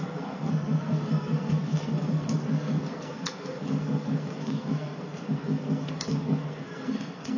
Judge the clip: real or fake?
fake